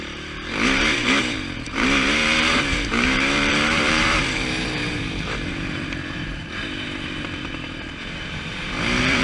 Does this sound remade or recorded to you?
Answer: remade